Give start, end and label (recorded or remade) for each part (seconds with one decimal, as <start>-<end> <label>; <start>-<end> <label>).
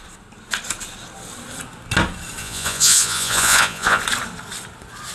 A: 0.0-2.4 recorded; 2.4-4.0 remade; 4.0-5.1 recorded